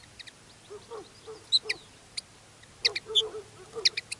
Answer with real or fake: real